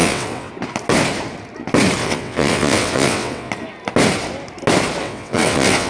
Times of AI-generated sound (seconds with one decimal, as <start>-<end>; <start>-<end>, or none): 0.0-0.5; 2.0-3.5; 5.0-5.9